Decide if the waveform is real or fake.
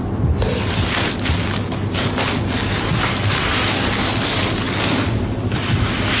real